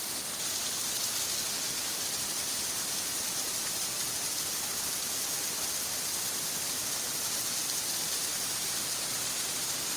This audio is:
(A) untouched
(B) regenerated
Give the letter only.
A